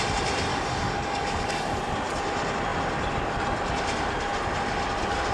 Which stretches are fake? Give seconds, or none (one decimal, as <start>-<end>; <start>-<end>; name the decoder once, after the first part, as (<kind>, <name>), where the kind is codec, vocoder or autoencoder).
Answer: 0.5-1.8 (codec, DAC)